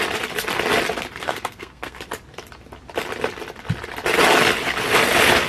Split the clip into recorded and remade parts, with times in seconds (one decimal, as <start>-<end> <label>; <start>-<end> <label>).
0.0-1.2 recorded; 1.2-2.0 remade; 2.0-5.5 recorded